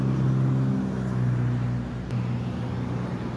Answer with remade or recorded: recorded